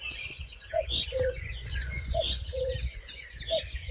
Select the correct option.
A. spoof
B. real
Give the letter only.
A